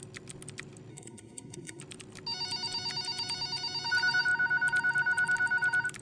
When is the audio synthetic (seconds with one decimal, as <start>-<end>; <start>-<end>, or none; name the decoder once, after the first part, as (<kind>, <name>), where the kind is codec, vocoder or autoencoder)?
0.9-1.8 (codec, SNAC)